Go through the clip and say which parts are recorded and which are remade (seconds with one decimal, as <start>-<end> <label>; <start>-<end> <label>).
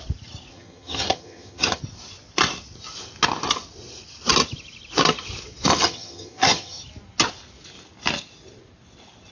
0.0-0.5 recorded; 0.5-1.8 remade; 1.8-5.7 recorded; 5.7-6.8 remade; 6.8-9.3 recorded